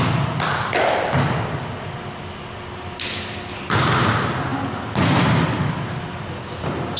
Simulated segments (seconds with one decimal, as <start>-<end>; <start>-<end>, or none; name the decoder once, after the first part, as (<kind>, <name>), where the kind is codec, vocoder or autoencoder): 4.5-5.8 (vocoder, BigVGAN v2)